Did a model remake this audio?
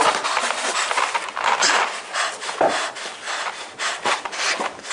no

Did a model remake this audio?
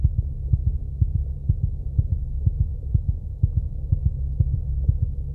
no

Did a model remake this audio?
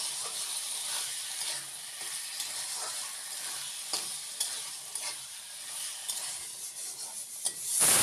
no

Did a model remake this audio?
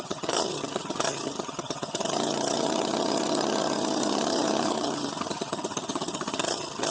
yes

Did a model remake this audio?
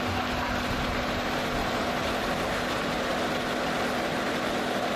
no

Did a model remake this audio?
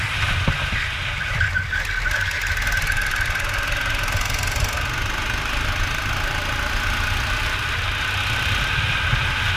no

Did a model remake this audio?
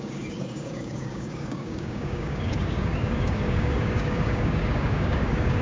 yes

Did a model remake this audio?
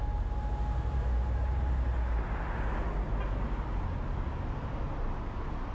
no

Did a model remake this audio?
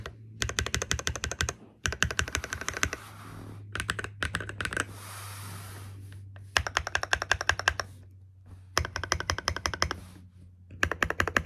no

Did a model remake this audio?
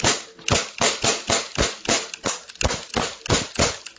no